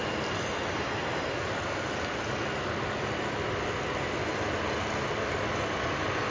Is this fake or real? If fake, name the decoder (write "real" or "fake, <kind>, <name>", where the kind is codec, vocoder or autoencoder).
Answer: real